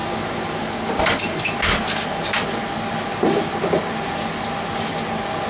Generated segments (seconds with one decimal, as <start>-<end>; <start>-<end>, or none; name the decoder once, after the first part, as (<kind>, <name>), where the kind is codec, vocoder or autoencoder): none

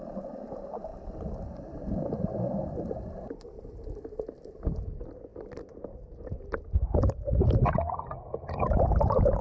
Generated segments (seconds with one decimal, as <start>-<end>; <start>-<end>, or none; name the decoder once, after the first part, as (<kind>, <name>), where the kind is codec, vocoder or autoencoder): 0.9-4.0 (vocoder, BigVGAN v2); 5.3-6.7

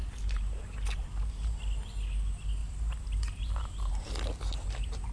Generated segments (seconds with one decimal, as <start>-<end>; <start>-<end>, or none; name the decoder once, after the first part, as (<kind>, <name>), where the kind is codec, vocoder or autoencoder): 0.0-1.6 (vocoder, BigVGAN v2); 2.6-4.1

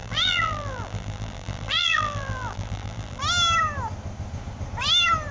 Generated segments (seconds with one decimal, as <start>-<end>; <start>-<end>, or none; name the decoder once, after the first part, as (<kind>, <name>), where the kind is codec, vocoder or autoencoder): 0.0-3.2 (vocoder, BigVGAN v2)

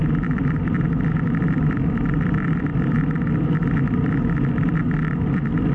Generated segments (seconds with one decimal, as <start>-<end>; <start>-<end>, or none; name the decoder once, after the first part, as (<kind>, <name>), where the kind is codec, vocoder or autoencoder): 0.0-2.7 (vocoder, BigVGAN v2); 5.3-5.7